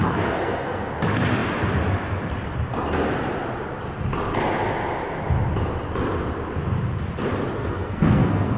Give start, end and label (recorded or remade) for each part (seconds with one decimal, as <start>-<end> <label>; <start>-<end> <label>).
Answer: 0.0-0.9 remade; 0.9-7.6 recorded; 7.6-8.6 remade

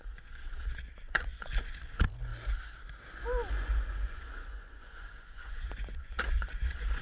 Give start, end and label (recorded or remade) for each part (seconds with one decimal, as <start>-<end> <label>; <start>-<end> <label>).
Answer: 0.0-2.3 remade; 2.3-3.5 recorded; 3.5-7.0 remade

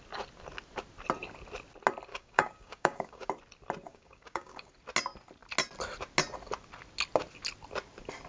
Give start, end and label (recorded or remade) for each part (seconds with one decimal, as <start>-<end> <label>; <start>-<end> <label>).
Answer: 0.0-2.1 recorded; 2.1-3.3 remade; 3.3-3.9 recorded; 3.9-4.7 remade; 4.7-8.3 recorded

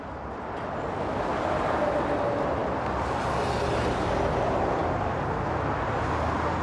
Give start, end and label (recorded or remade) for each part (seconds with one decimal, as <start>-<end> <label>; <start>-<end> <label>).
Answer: 0.0-6.6 recorded